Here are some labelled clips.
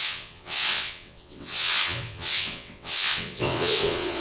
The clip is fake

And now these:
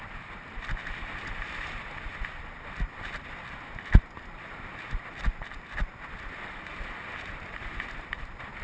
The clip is real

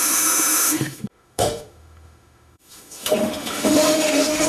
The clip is fake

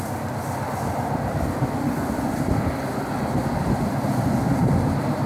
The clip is real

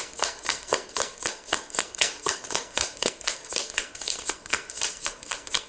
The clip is fake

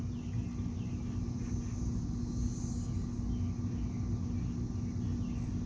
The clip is real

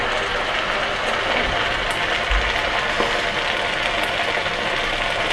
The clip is real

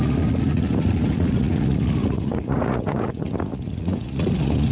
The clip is fake